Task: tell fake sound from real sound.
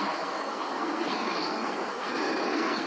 fake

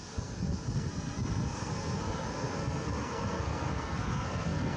fake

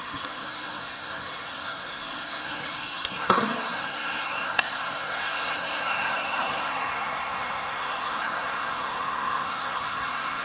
fake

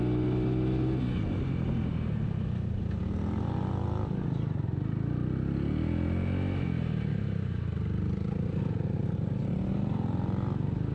real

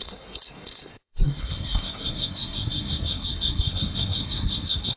fake